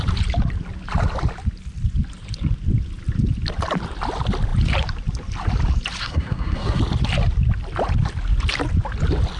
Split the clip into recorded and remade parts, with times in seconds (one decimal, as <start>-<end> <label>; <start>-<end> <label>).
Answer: 0.0-6.0 recorded; 6.0-6.8 remade; 6.8-9.4 recorded